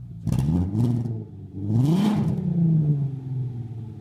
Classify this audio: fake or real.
real